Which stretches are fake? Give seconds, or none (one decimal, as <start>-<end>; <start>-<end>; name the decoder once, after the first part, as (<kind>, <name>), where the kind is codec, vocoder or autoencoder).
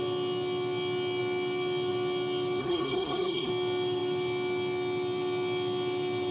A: 2.6-3.5 (codec, SNAC)